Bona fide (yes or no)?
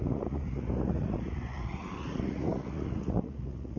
no